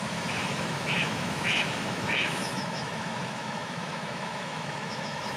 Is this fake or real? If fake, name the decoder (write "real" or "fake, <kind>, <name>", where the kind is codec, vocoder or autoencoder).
fake, autoencoder, DAC-VAE